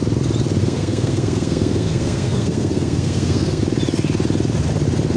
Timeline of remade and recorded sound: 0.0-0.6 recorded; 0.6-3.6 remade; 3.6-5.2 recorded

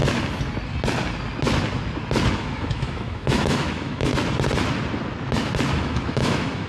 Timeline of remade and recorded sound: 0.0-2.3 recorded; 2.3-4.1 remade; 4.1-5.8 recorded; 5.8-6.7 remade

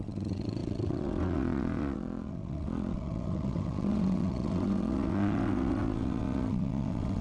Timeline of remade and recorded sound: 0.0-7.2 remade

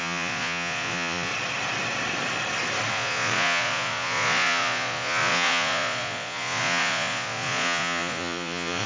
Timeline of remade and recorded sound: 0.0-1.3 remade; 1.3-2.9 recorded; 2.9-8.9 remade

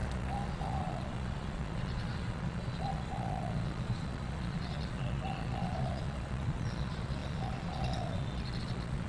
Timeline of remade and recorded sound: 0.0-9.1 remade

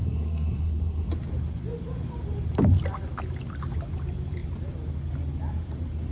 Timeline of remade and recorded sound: 0.0-1.1 remade; 1.1-6.1 recorded

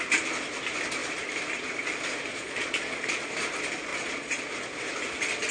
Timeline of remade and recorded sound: 0.0-2.3 recorded; 2.3-3.3 remade; 3.3-3.9 recorded; 3.9-4.4 remade; 4.4-5.5 recorded

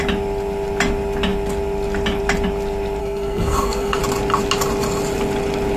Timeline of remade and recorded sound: 0.0-3.0 recorded; 3.0-4.0 remade; 4.0-5.8 recorded